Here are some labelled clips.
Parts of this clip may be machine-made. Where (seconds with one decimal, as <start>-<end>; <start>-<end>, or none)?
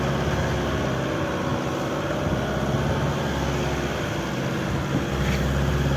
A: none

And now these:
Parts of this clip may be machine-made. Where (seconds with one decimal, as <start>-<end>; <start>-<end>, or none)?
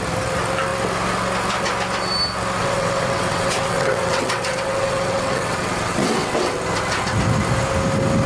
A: 2.6-6.6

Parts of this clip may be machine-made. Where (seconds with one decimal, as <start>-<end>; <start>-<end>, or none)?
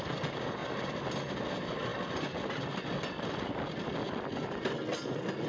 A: none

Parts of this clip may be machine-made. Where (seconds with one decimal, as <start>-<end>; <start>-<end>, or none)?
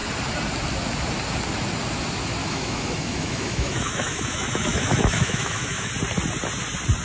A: 2.4-5.9